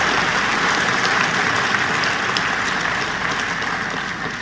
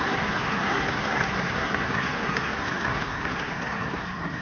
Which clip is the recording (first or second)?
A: first